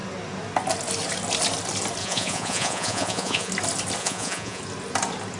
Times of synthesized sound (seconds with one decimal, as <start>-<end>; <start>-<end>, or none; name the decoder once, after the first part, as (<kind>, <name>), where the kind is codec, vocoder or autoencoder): 2.0-3.5 (vocoder, Vocos); 4.0-4.6